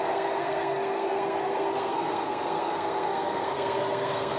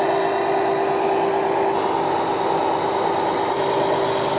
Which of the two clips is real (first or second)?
second